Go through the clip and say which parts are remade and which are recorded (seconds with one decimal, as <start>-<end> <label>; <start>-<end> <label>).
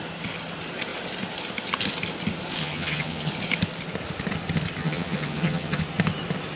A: 0.0-2.6 recorded; 2.6-3.3 remade; 3.3-4.8 recorded; 4.8-5.8 remade; 5.8-6.6 recorded